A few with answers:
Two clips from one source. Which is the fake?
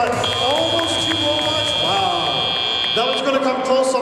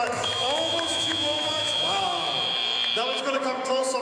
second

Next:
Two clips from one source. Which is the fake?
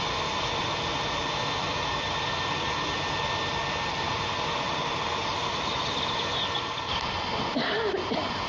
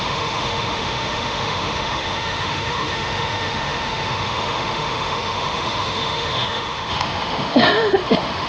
second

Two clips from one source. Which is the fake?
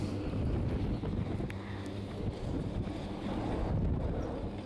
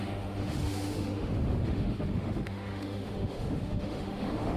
second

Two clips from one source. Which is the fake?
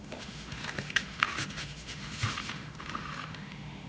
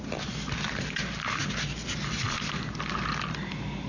first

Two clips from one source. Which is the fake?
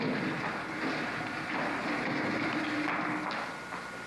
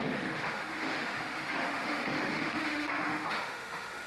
second